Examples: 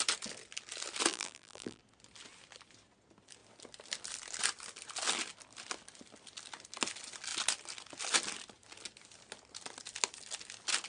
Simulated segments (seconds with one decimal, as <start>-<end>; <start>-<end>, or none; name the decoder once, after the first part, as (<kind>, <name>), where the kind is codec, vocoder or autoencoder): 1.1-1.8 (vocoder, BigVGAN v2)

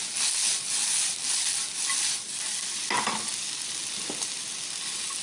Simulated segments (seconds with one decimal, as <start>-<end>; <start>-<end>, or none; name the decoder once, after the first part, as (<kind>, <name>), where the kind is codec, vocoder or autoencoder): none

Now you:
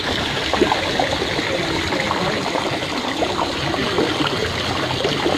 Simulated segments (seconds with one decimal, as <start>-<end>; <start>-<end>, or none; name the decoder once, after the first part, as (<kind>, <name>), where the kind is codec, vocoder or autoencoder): none

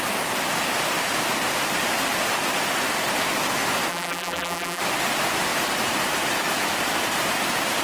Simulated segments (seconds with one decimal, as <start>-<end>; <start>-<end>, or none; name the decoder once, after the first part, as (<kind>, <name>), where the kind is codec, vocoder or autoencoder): 3.9-4.8 (vocoder, BigVGAN v2)